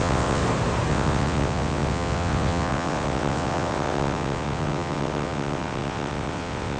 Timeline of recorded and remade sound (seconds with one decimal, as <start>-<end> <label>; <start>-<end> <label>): 0.0-0.4 remade; 0.4-0.9 recorded; 0.9-6.8 remade

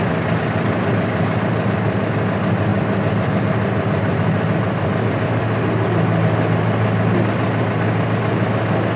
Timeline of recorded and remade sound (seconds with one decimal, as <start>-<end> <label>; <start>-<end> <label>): 0.0-9.0 recorded

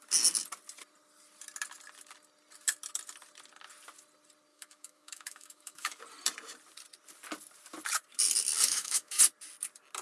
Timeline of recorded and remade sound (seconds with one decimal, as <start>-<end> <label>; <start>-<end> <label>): 0.0-4.5 recorded; 4.5-6.0 remade; 6.0-8.6 recorded; 8.6-9.2 remade; 9.2-10.0 recorded

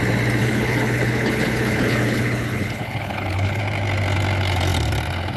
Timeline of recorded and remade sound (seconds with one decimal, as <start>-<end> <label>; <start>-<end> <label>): 0.0-0.4 recorded; 0.4-3.6 remade; 3.6-5.4 recorded

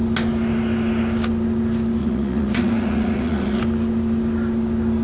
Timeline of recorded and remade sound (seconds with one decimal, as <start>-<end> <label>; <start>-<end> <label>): 0.0-2.0 recorded; 2.0-3.6 remade; 3.6-5.0 recorded

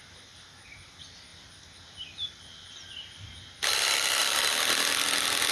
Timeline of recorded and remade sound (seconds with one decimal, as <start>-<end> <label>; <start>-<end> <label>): 0.0-5.5 recorded

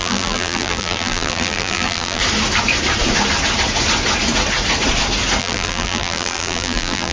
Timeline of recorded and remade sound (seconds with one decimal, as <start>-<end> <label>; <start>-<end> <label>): 0.0-2.2 remade; 2.2-5.4 recorded; 5.4-7.1 remade

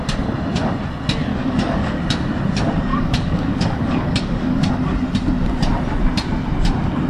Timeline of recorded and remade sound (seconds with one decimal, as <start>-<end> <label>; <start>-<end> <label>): 0.0-1.3 recorded; 1.3-2.0 remade; 2.0-2.9 recorded; 2.9-4.7 remade; 4.7-7.1 recorded